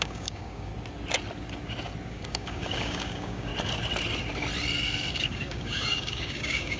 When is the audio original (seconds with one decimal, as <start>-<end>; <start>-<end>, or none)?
0.7-2.1; 3.5-5.1